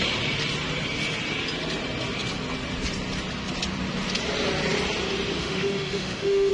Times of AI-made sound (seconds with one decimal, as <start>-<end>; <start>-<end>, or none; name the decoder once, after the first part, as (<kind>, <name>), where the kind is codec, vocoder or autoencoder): 5.4-6.5 (autoencoder, DAC-VAE)